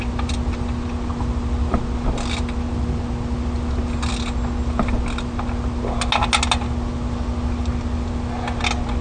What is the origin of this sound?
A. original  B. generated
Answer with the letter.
A